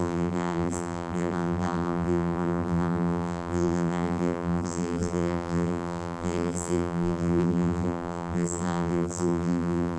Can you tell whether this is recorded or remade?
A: remade